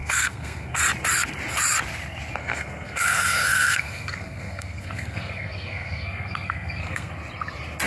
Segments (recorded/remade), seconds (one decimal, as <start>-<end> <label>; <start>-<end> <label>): 0.0-0.8 remade; 0.8-2.4 recorded; 2.4-7.1 remade; 7.1-7.9 recorded

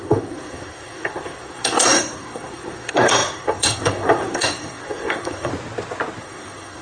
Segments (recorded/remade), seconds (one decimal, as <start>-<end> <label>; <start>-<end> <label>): 0.0-5.5 remade; 5.5-6.2 recorded; 6.2-6.8 remade